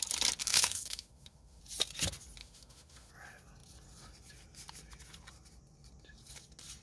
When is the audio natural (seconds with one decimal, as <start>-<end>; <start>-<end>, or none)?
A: 0.0-0.4; 1.6-2.4; 3.1-6.8